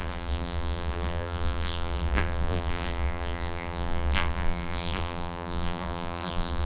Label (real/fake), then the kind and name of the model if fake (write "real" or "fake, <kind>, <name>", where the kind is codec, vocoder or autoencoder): fake, vocoder, BigVGAN v2